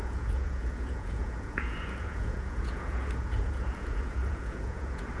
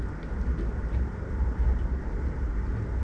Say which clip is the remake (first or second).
first